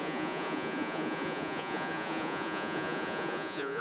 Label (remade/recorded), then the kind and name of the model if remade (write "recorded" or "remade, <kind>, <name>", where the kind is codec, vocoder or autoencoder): remade, vocoder, Vocos